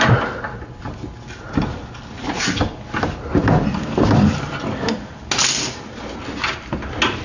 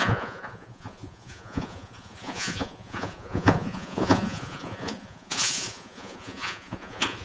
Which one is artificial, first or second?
second